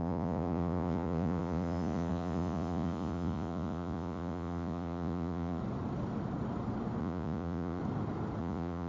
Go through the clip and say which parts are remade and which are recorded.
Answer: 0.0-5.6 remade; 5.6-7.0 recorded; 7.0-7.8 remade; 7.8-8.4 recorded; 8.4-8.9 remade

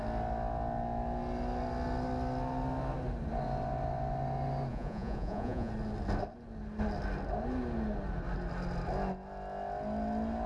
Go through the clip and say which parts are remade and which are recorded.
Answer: 0.0-4.7 recorded; 4.7-5.7 remade; 5.7-10.5 recorded

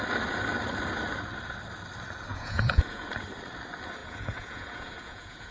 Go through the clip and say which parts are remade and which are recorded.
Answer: 0.0-2.3 recorded; 2.3-3.1 remade; 3.1-4.0 recorded; 4.0-5.5 remade